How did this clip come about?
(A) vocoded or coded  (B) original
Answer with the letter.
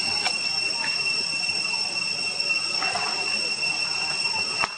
B